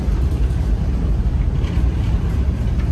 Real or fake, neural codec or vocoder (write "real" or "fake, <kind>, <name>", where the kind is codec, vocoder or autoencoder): fake, vocoder, BigVGAN v2